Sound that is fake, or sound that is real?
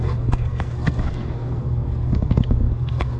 fake